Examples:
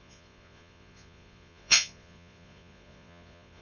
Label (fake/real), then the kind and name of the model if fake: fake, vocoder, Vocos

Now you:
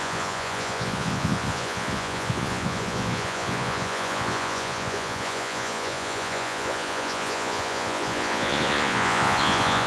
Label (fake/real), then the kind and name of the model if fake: fake, vocoder, Vocos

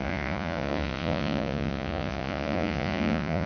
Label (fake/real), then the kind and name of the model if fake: fake, vocoder, Vocos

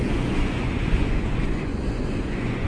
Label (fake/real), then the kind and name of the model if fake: fake, vocoder, Vocos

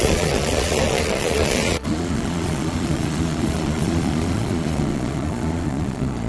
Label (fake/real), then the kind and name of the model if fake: fake, vocoder, Vocos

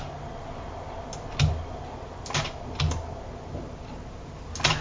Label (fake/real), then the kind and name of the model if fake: real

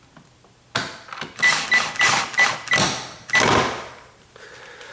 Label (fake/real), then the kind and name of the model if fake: real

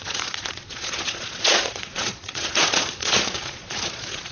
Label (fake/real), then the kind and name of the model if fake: fake, vocoder, Vocos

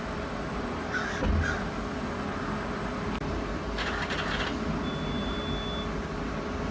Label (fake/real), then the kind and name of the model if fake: real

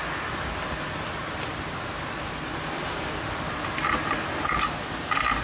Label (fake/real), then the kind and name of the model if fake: real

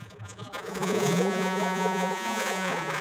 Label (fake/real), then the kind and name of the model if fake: fake, vocoder, Vocos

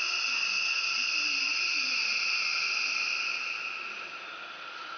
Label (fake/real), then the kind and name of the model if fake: real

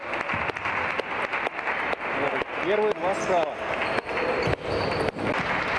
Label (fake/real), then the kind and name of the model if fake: real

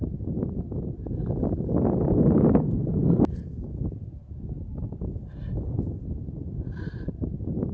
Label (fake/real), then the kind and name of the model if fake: real